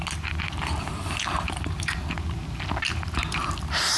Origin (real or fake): real